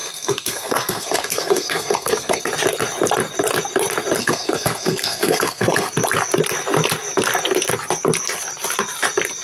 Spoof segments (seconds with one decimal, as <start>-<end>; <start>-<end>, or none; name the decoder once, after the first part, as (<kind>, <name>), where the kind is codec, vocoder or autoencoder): 0.0-2.5 (codec, SNAC); 4.2-5.9